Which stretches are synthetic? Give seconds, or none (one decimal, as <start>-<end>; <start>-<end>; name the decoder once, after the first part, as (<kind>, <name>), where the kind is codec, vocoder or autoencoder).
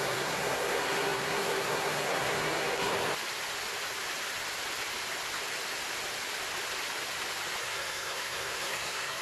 0.0-2.9 (codec, SNAC); 7.6-9.2